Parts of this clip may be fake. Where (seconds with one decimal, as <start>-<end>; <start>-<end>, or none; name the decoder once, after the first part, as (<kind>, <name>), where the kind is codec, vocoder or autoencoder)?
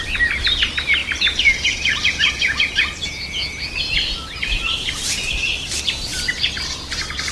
1.0-3.1 (vocoder, BigVGAN v2)